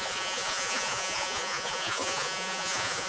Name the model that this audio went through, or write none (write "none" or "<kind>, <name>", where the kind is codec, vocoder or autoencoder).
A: vocoder, Vocos